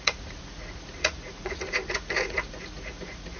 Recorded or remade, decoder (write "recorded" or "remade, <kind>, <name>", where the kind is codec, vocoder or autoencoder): remade, vocoder, Vocos